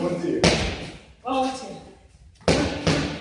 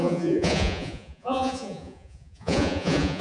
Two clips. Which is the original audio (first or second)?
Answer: first